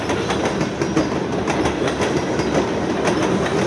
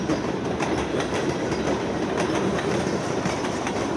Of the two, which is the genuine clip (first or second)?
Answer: first